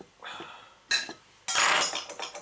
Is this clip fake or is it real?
real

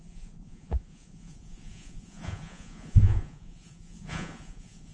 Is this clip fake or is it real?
fake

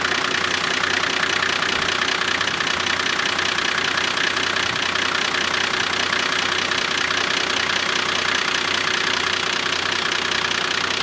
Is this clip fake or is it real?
real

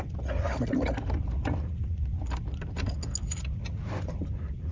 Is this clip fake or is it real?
real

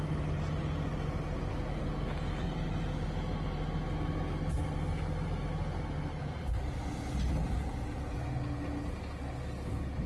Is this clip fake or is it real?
real